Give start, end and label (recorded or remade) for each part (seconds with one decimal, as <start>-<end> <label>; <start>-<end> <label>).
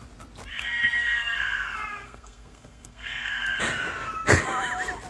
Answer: 0.0-0.5 recorded; 0.5-3.6 remade; 3.6-5.1 recorded